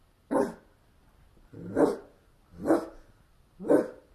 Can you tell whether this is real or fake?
real